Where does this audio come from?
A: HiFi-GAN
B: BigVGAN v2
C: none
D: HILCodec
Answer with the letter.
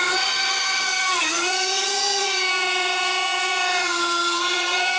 A